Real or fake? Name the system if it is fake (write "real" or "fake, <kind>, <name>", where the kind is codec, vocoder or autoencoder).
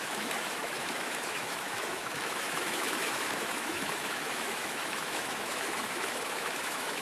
fake, autoencoder, DAC-VAE